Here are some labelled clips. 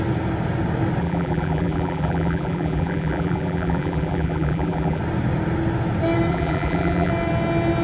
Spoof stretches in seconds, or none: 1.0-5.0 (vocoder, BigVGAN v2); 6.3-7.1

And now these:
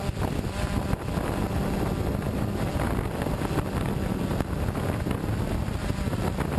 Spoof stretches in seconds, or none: none

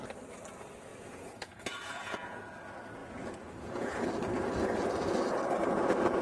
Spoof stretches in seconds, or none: 0.9-2.4 (vocoder, Vocos); 3.0-4.0

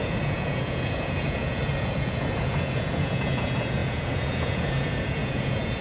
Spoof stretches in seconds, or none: 0.0-5.8 (vocoder, Vocos)

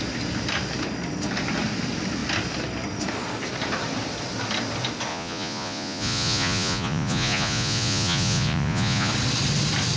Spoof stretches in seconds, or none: 5.1-9.1 (vocoder, Vocos)

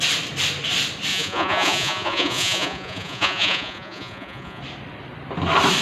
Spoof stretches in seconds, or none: 1.1-4.6 (vocoder, Vocos)

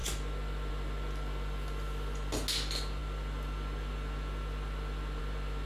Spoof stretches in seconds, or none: none